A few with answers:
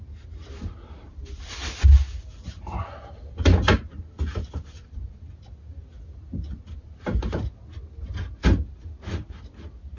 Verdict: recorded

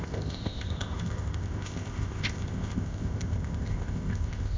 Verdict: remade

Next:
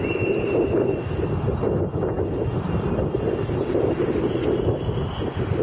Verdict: recorded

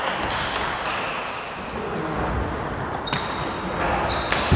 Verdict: recorded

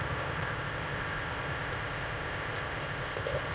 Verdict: remade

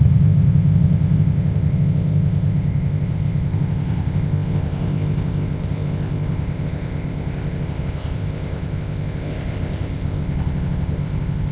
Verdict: remade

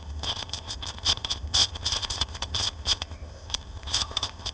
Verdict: remade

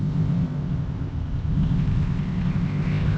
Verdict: remade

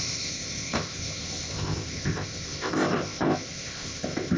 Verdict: remade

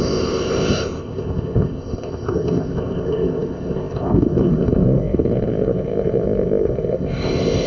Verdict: remade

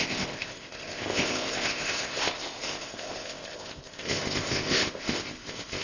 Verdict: remade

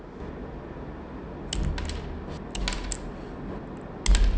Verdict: recorded